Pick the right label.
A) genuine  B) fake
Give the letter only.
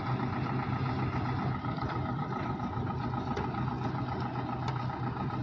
A